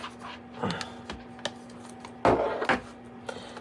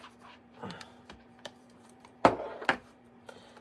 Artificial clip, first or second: second